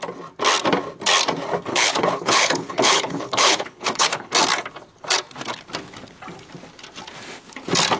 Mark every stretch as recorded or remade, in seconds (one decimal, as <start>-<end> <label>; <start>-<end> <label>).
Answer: 0.0-1.7 recorded; 1.7-4.3 remade; 4.3-8.0 recorded